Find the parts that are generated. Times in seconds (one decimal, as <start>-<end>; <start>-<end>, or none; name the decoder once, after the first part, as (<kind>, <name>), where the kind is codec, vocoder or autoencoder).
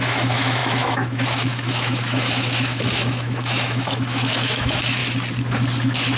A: 0.0-5.0 (autoencoder, DAC-VAE)